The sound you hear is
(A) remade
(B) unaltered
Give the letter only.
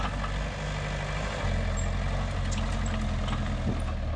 B